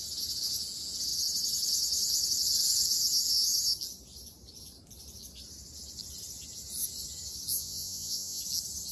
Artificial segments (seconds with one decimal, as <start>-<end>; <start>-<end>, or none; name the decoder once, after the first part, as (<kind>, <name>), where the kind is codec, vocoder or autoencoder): 7.5-8.4 (vocoder, Vocos)